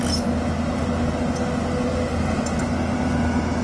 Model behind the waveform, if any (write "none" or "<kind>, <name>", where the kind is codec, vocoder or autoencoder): none